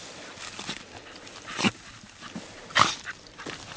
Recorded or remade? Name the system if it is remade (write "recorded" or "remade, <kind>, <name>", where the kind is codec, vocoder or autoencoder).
recorded